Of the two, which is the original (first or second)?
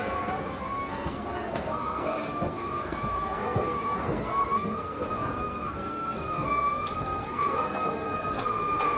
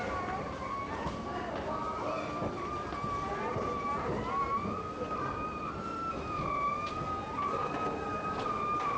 second